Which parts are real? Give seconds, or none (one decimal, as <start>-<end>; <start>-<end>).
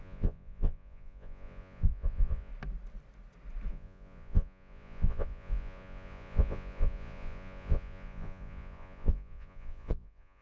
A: 2.5-3.7